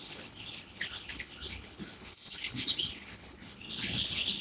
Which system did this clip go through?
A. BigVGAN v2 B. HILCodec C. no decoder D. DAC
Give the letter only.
B